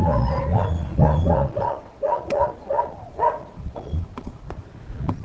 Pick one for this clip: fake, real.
fake